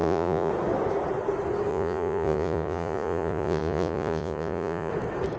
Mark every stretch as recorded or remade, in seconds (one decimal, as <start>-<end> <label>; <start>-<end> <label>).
0.0-0.5 remade; 0.5-1.7 recorded; 1.7-4.9 remade; 4.9-5.4 recorded